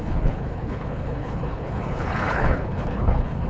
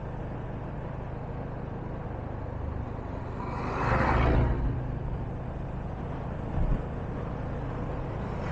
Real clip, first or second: second